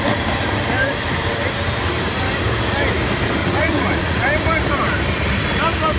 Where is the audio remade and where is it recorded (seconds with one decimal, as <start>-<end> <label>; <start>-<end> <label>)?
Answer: 0.0-3.4 recorded; 3.4-4.2 remade; 4.2-6.0 recorded